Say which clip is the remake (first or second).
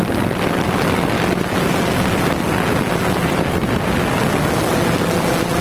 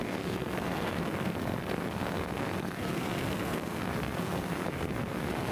second